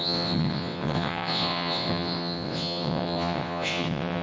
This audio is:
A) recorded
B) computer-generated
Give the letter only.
B